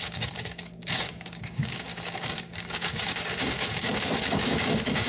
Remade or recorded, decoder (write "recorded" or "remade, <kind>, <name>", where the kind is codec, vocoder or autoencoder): remade, codec, DAC